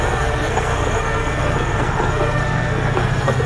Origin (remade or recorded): remade